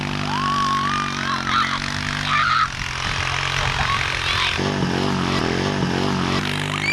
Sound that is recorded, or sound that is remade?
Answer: recorded